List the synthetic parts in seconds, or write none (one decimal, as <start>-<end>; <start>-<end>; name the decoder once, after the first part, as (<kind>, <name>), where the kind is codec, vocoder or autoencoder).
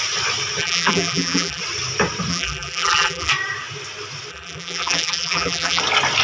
0.6-1.6 (vocoder, BigVGAN v2); 2.3-3.3; 4.3-5.8